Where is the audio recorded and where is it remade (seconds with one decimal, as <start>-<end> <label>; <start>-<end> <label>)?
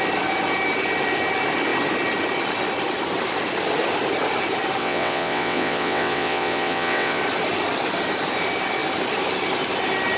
0.0-4.8 recorded; 4.8-7.2 remade; 7.2-10.2 recorded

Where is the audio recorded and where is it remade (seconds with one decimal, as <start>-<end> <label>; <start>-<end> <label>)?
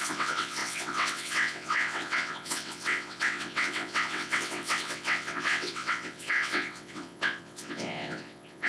0.0-8.7 remade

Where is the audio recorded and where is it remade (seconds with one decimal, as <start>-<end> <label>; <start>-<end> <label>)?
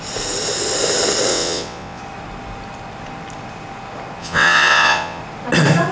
0.0-1.3 recorded; 1.3-2.0 remade; 2.0-4.2 recorded; 4.2-5.2 remade; 5.2-5.9 recorded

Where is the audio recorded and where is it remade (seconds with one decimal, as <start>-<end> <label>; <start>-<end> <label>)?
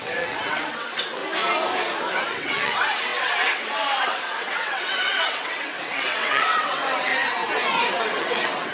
0.0-1.2 remade; 1.2-2.2 recorded; 2.2-7.1 remade; 7.1-8.0 recorded; 8.0-8.7 remade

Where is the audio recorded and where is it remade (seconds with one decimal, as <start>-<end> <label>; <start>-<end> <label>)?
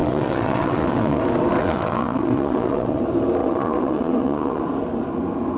0.0-1.2 remade; 1.2-1.6 recorded; 1.6-3.0 remade; 3.0-3.4 recorded; 3.4-4.6 remade; 4.6-5.6 recorded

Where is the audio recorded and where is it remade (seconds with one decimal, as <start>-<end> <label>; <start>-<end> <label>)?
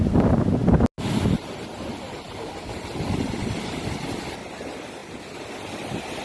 0.0-6.2 recorded